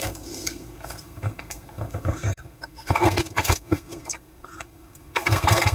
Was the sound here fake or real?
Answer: fake